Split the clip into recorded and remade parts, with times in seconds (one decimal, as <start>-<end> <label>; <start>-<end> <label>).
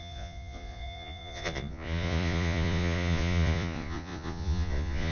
0.0-5.1 remade